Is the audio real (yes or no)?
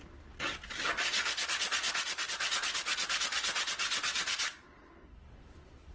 yes